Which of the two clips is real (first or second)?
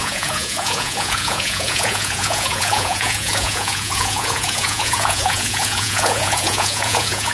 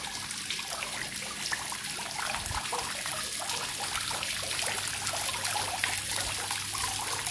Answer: second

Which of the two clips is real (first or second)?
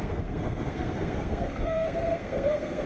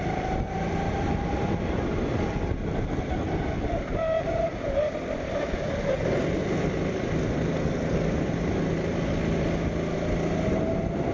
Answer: second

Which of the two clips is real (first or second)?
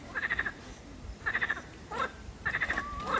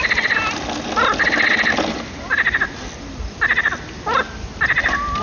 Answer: second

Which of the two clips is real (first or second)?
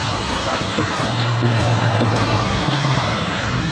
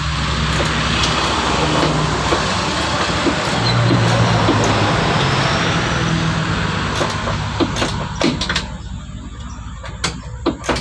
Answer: second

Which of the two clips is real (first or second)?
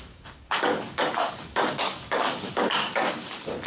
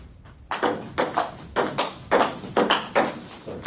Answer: second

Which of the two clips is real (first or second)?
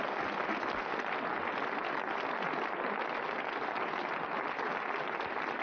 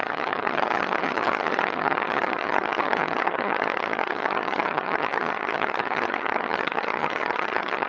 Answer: first